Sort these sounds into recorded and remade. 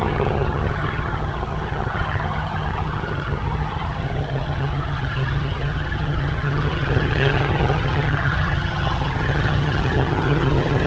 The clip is remade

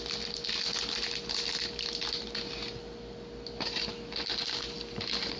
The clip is recorded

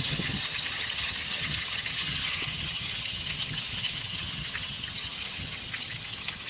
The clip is remade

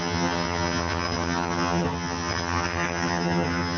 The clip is remade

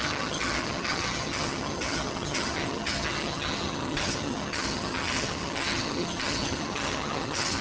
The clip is remade